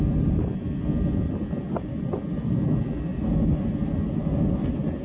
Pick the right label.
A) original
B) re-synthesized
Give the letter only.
A